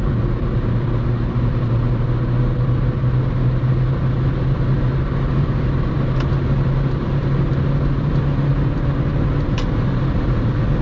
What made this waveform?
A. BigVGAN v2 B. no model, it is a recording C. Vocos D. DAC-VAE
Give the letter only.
B